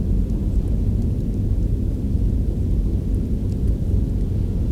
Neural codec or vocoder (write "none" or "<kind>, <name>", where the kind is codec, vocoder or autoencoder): none